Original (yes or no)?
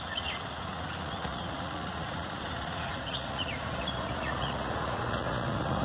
no